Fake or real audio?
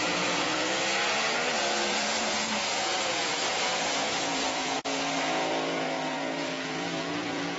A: fake